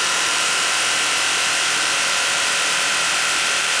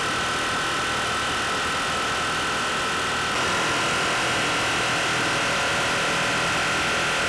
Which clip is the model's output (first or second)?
first